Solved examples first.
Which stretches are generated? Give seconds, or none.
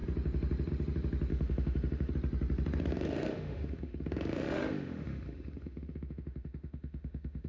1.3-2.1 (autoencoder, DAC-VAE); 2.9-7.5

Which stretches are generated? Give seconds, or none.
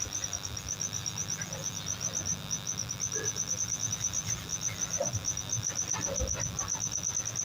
none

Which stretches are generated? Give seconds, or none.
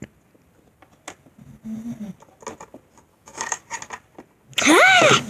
3.1-3.6 (autoencoder, DAC-VAE)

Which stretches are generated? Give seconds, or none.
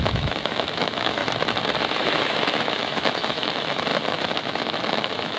0.0-1.2 (autoencoder, DAC-VAE); 1.9-5.4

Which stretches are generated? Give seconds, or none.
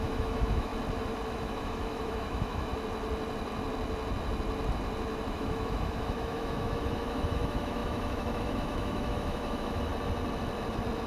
0.0-0.7 (autoencoder, DAC-VAE); 1.3-2.7; 5.3-9.9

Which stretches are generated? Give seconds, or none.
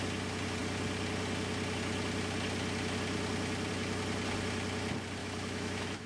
5.2-6.1 (autoencoder, DAC-VAE)